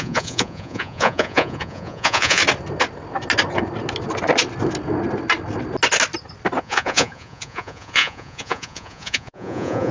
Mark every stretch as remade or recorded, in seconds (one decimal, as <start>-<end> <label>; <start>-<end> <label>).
0.0-2.4 remade; 2.4-6.6 recorded; 6.6-9.9 remade